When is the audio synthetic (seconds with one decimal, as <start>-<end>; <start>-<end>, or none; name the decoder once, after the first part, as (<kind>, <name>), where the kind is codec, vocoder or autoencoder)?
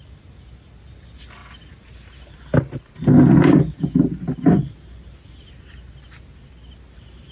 none